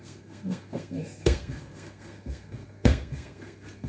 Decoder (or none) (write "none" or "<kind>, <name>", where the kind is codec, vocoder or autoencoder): codec, SNAC